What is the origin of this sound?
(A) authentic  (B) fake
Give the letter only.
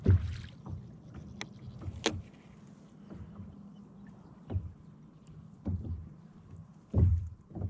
A